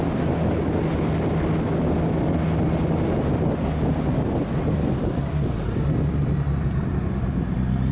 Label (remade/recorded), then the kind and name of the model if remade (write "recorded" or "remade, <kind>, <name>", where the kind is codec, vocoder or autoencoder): recorded